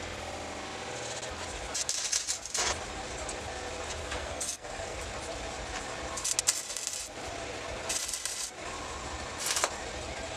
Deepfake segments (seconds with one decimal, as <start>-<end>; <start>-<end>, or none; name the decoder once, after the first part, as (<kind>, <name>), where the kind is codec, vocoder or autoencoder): 4.0-5.0 (codec, SNAC)